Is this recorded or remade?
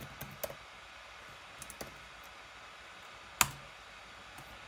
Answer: recorded